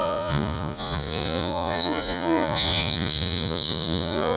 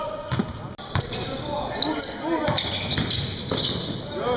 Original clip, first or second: second